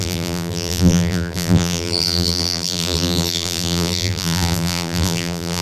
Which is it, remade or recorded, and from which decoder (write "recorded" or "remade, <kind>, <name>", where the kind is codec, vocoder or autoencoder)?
remade, vocoder, BigVGAN v2